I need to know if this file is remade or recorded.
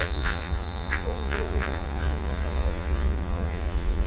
remade